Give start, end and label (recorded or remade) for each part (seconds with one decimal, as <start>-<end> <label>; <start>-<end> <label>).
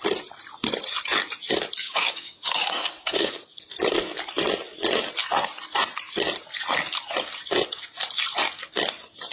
0.0-1.8 recorded; 1.8-3.6 remade; 3.6-9.3 recorded